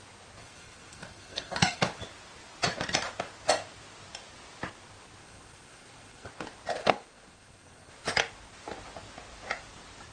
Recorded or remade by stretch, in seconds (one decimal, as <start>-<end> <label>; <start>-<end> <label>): 0.0-0.4 recorded; 0.4-1.8 remade; 1.8-5.2 recorded; 5.2-6.3 remade; 6.3-6.8 recorded; 6.8-7.9 remade; 7.9-10.1 recorded